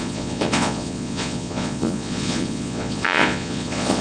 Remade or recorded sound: remade